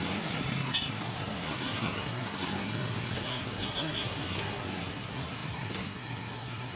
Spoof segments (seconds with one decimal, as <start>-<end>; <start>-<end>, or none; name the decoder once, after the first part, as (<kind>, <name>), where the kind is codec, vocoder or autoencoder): 0.0-6.8 (codec, SNAC)